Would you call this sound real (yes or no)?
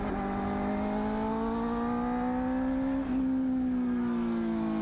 yes